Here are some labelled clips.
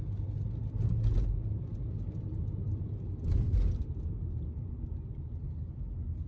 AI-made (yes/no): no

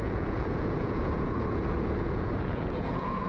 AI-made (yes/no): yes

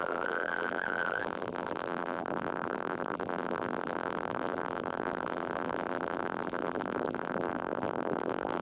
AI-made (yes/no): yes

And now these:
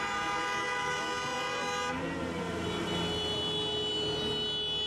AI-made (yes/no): no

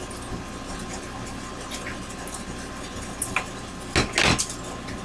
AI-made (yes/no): no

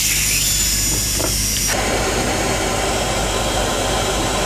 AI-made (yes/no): yes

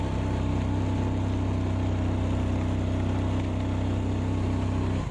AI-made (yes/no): no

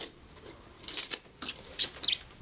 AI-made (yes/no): no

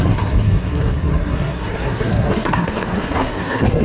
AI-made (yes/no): yes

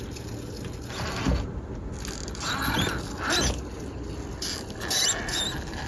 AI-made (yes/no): no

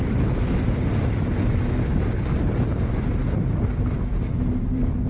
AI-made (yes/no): no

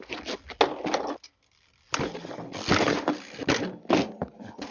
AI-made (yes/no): no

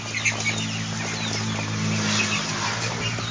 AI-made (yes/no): no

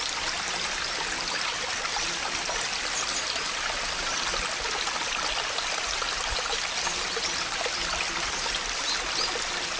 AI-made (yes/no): no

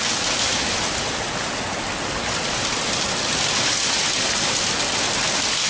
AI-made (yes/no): no